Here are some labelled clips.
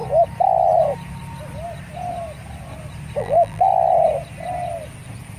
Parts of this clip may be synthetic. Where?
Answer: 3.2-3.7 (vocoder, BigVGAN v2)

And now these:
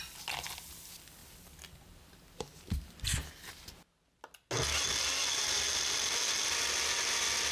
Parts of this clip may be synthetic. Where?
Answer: none

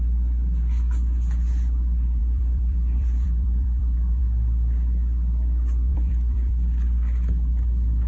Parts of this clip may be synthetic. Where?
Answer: 2.2-4.2 (vocoder, BigVGAN v2); 5.9-6.5

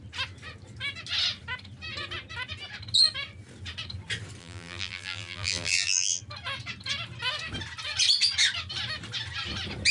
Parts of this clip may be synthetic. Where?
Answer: 4.4-6.2 (vocoder, BigVGAN v2)

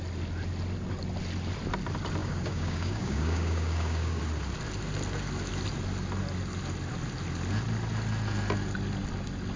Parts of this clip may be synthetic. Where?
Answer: 2.2-4.2 (codec, DAC)

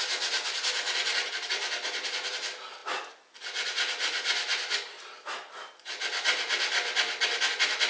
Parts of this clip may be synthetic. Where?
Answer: none